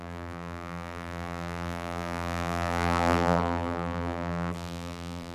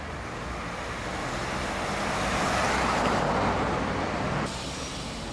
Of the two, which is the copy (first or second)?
first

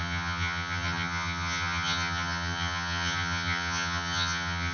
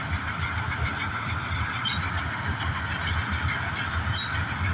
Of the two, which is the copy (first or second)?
first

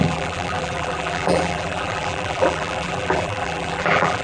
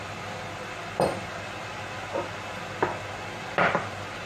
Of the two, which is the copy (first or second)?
first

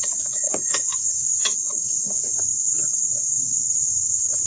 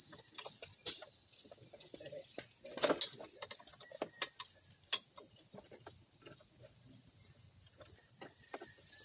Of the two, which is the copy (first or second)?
first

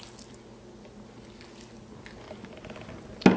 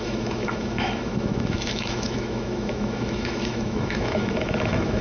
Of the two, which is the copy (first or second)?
second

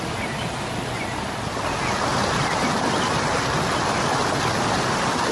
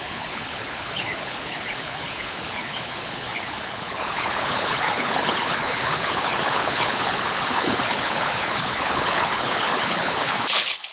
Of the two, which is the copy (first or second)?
second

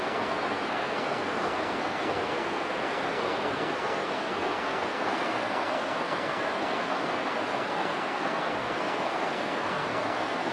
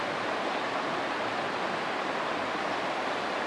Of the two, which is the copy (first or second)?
first